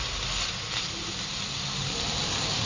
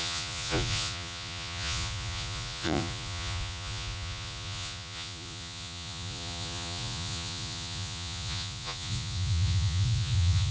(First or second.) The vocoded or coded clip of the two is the second